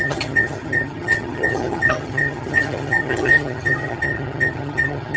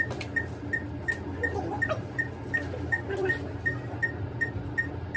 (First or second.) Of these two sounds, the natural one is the second